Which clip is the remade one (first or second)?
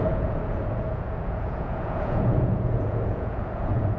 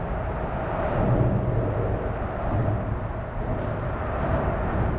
first